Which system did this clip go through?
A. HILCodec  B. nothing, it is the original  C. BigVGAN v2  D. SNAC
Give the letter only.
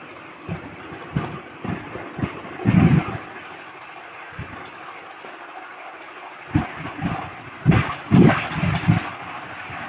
B